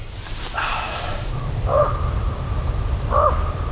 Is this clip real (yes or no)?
no